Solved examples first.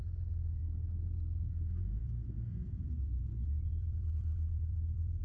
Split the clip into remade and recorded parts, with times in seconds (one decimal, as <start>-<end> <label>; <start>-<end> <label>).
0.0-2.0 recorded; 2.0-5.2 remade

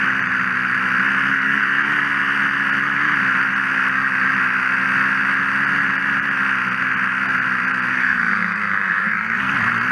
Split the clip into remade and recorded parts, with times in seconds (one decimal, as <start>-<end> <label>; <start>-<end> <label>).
0.0-1.3 recorded; 1.3-1.9 remade; 1.9-7.9 recorded; 7.9-9.5 remade; 9.5-9.9 recorded

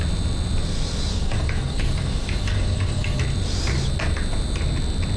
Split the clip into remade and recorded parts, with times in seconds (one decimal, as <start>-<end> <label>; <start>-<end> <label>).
0.0-1.1 recorded; 1.1-3.2 remade; 3.2-5.2 recorded